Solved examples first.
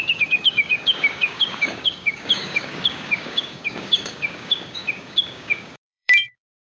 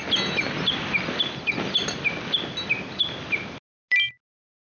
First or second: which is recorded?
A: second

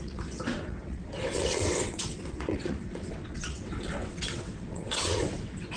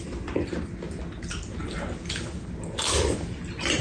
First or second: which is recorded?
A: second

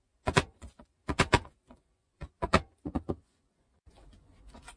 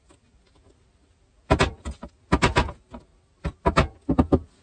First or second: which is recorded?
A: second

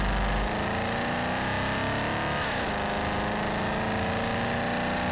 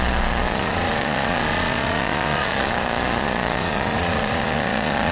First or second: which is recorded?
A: first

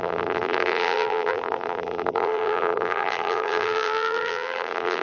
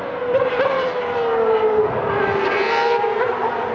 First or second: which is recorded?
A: second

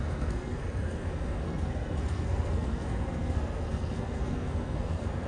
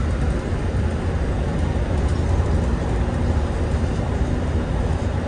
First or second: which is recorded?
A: second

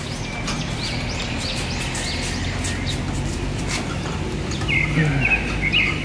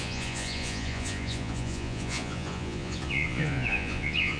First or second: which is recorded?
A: first